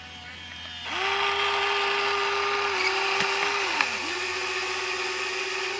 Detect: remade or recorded remade